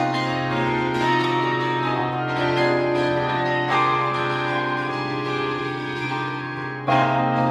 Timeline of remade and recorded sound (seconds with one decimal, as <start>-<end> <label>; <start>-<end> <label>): 0.0-7.5 remade